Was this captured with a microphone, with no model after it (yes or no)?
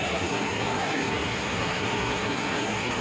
no